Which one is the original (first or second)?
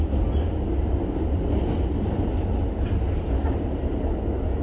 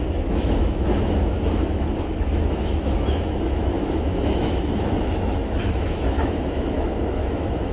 first